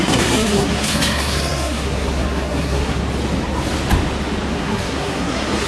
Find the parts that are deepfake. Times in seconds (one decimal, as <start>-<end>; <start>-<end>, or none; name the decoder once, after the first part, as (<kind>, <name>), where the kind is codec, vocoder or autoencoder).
0.0-3.0 (codec, SNAC); 4.5-5.7

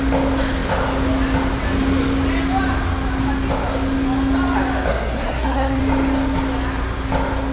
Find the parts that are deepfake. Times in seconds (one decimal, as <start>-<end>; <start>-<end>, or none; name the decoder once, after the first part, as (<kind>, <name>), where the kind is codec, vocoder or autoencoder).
4.9-5.8 (codec, SNAC)

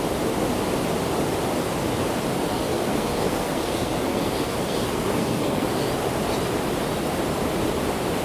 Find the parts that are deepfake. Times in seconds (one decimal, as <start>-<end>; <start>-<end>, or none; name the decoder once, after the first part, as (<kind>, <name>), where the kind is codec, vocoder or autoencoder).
2.5-5.9 (codec, SNAC)

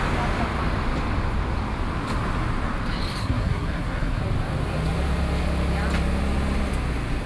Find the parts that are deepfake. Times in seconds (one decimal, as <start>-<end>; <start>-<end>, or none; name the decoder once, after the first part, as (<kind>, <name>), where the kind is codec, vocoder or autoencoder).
3.2-4.2 (codec, SNAC)